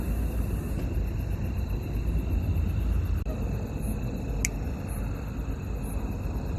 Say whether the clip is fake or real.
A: real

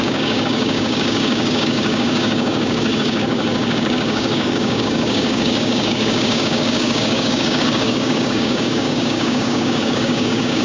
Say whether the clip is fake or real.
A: fake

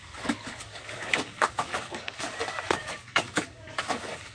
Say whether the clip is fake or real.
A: fake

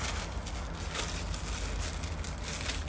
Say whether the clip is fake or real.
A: real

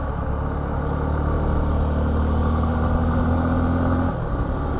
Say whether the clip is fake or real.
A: real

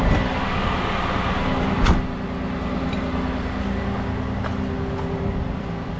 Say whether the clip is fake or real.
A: real